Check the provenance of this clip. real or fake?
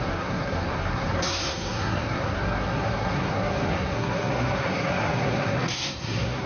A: fake